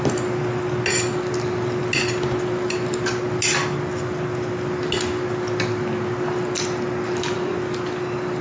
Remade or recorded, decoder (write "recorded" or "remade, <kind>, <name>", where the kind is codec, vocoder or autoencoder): recorded